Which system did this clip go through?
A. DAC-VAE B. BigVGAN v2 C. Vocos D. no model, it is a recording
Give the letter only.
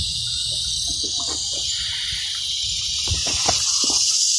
D